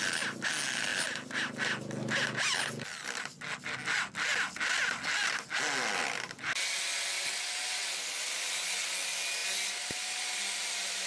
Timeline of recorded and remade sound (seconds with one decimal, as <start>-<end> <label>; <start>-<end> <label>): 0.0-11.1 recorded